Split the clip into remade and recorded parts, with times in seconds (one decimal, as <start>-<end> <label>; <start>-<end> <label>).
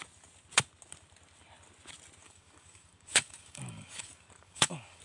0.0-2.2 recorded; 2.2-5.0 remade